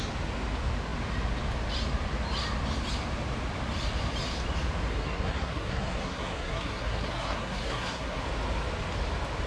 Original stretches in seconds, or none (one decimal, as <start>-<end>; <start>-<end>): 0.0-4.9; 8.2-9.5